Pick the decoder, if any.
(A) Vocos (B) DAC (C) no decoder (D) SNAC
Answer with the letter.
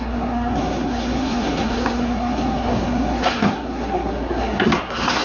D